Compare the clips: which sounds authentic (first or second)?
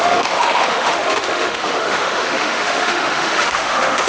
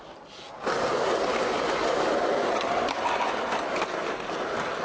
second